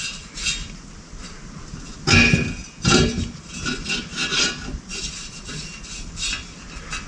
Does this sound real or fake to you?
real